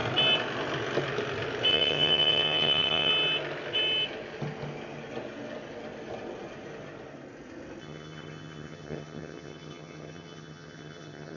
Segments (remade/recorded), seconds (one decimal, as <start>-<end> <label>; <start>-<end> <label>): 0.0-1.7 recorded; 1.7-3.1 remade; 3.1-7.8 recorded; 7.8-11.4 remade

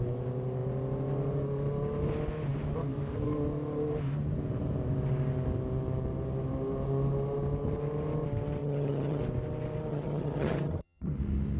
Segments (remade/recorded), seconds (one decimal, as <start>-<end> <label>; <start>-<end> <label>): 0.0-8.6 recorded; 8.6-9.2 remade; 9.2-9.9 recorded; 9.9-11.2 remade; 11.2-11.6 recorded

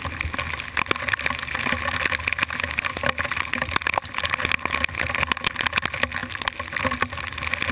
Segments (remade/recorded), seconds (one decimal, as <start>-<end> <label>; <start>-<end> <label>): 0.0-7.7 recorded